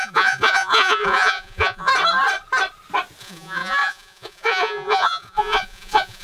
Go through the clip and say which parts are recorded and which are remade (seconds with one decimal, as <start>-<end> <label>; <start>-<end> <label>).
0.0-1.9 remade; 1.9-3.2 recorded; 3.2-6.2 remade